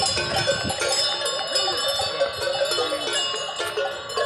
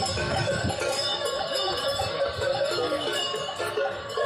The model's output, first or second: second